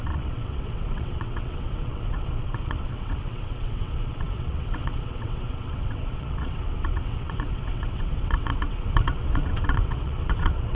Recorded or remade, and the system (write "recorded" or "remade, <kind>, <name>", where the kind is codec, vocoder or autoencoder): remade, vocoder, WaveNeXt